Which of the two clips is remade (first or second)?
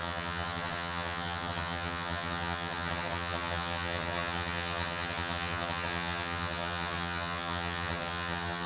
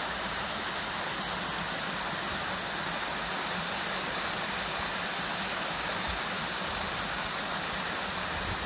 first